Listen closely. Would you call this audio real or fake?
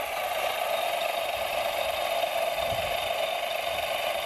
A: real